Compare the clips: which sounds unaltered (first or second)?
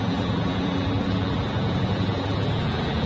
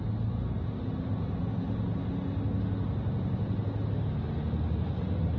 second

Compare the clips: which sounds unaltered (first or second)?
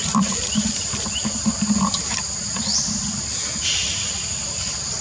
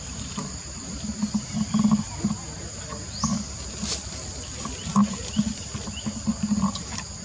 second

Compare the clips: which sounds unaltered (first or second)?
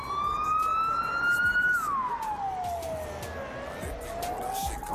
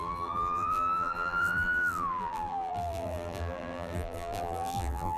first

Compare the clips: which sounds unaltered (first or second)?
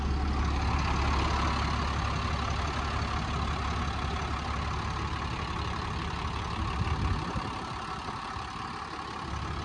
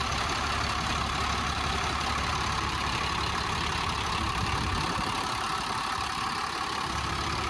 first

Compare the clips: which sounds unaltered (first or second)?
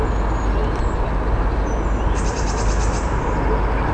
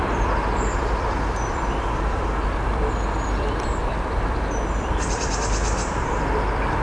first